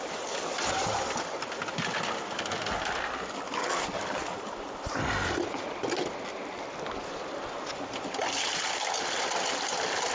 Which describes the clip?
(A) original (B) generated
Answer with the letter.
A